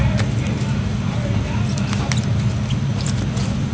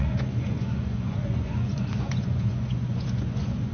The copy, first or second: second